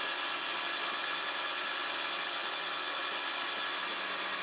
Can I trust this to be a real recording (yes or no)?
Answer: yes